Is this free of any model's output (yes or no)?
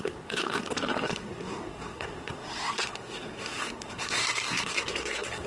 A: no